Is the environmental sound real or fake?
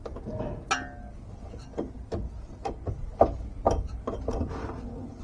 real